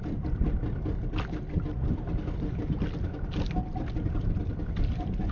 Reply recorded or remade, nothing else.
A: recorded